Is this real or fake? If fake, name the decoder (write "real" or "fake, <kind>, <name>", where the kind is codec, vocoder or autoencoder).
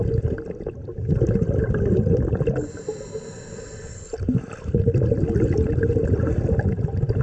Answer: real